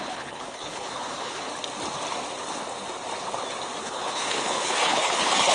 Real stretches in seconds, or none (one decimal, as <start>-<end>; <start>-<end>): 1.5-3.8